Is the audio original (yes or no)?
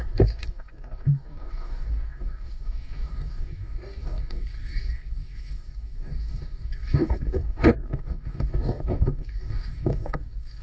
no